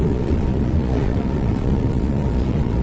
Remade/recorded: remade